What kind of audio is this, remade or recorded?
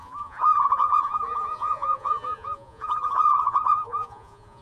remade